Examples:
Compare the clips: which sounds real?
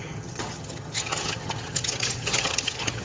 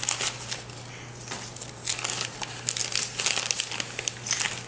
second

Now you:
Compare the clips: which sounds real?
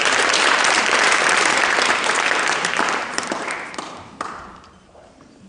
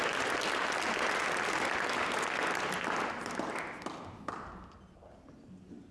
second